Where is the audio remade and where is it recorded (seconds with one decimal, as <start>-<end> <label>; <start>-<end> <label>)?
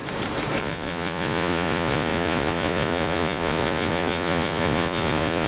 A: 0.0-0.6 recorded; 0.6-5.5 remade